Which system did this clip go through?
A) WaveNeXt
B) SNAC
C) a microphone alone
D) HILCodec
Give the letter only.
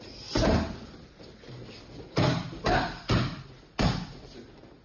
C